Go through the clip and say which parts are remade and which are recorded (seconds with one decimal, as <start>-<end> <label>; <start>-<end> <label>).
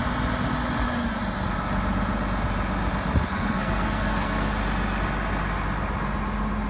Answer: 0.0-3.3 recorded; 3.3-4.5 remade; 4.5-6.7 recorded